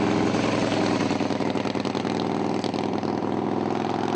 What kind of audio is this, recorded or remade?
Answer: recorded